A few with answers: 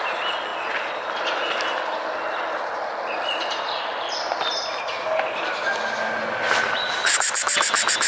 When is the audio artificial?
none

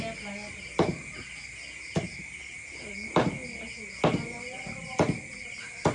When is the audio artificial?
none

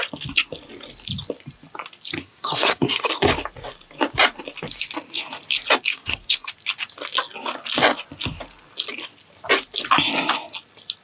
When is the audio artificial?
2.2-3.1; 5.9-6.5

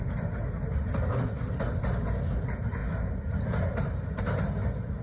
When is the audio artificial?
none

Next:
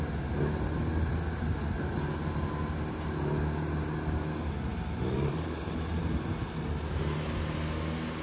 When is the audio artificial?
4.7-6.0

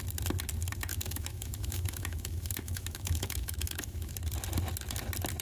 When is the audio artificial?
0.9-4.1

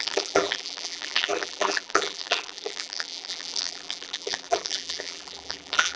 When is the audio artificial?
0.0-6.0